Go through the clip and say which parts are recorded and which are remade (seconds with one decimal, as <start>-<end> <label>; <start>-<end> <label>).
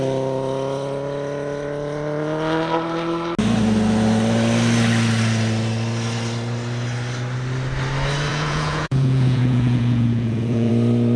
0.0-8.3 recorded; 8.3-10.7 remade; 10.7-11.2 recorded